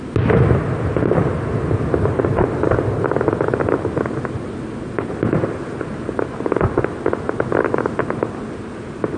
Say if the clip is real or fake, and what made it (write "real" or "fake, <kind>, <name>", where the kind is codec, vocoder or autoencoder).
real